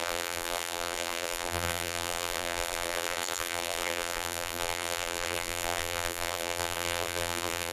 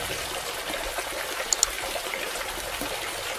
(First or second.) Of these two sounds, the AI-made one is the first